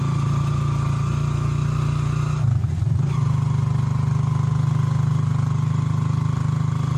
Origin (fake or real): real